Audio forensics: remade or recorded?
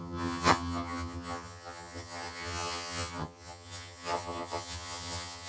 remade